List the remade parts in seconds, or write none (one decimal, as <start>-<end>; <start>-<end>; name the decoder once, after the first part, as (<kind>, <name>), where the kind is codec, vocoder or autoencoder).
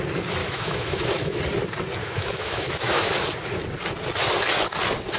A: 0.4-1.4 (autoencoder, DAC-VAE); 2.0-3.1